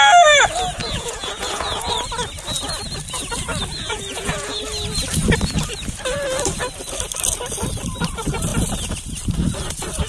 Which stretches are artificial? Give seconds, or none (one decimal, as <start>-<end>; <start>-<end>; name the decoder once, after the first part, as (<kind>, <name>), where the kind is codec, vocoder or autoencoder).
0.8-1.9 (vocoder, Vocos); 3.8-4.6